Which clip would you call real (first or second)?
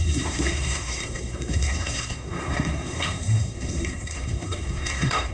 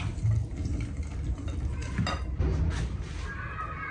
second